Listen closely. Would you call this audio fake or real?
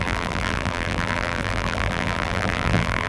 fake